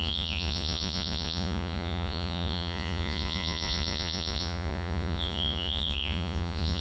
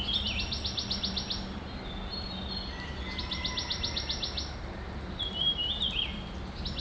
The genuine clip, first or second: second